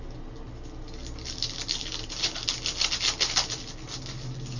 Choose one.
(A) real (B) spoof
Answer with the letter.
A